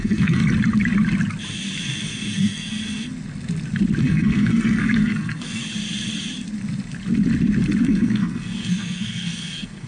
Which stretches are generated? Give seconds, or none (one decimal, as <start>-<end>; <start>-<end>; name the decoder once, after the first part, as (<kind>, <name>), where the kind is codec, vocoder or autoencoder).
0.0-0.4 (codec, SNAC); 1.8-3.1; 4.0-5.6; 7.8-9.9